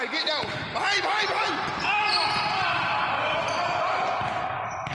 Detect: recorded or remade recorded